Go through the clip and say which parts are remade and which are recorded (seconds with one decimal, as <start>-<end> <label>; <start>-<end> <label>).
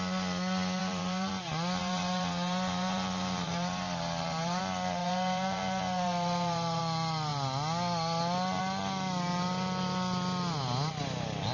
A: 0.0-0.8 recorded; 0.8-1.3 remade; 1.3-1.8 recorded; 1.8-4.6 remade; 4.6-5.0 recorded; 5.0-6.8 remade; 6.8-11.5 recorded